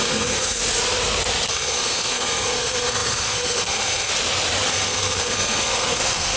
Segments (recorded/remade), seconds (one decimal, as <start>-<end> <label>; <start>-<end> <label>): 0.0-0.6 remade; 0.6-1.5 recorded; 1.5-4.1 remade; 4.1-4.7 recorded; 4.7-6.4 remade